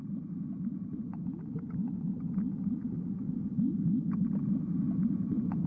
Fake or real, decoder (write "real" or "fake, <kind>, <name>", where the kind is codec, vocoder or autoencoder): real